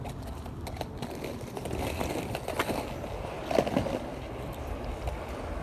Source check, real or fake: real